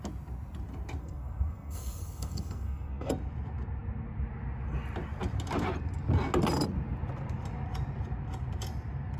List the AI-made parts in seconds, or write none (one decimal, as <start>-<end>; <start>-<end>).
1.0-3.1